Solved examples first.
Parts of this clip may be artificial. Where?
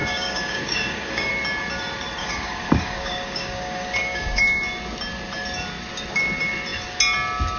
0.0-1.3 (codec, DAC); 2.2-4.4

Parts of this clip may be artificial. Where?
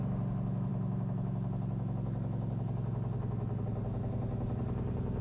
none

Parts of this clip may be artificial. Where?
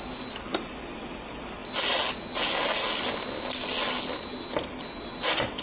none